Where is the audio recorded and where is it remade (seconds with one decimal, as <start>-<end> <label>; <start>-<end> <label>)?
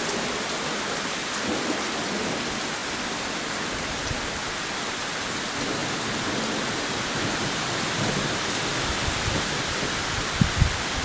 0.0-11.0 recorded